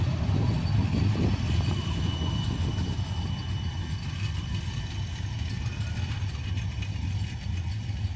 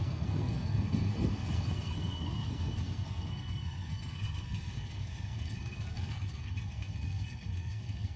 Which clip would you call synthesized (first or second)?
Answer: second